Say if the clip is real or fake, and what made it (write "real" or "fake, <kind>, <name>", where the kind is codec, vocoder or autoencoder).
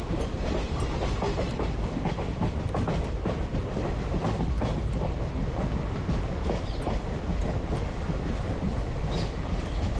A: real